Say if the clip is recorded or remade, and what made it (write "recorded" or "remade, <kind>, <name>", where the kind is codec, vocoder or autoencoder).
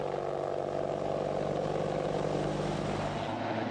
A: recorded